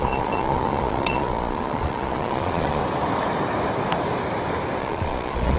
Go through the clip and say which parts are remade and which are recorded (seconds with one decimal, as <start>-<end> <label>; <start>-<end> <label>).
0.0-2.8 remade; 2.8-4.8 recorded; 4.8-5.6 remade